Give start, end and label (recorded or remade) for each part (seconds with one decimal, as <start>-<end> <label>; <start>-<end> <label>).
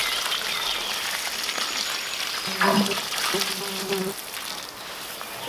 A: 0.0-5.5 recorded